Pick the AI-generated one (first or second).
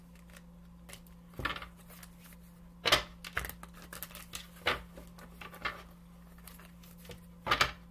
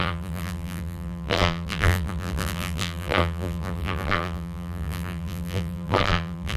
second